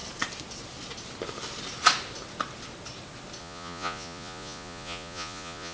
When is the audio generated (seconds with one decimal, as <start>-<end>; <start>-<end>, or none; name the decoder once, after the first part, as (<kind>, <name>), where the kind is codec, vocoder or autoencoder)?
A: 3.4-5.7 (vocoder, Vocos)